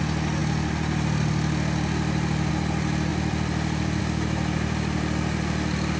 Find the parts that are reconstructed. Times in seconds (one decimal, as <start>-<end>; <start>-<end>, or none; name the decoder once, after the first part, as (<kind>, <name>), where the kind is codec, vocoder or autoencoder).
3.1-4.0 (vocoder, BigVGAN v2)